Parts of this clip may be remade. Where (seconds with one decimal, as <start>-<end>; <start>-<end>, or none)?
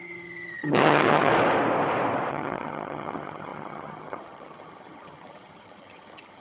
0.0-1.3; 2.3-6.4